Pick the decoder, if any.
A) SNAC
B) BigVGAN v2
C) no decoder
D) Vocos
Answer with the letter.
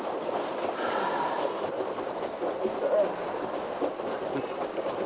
C